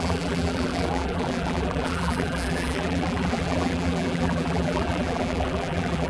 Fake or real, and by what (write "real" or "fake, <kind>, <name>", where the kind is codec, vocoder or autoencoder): fake, vocoder, BigVGAN v2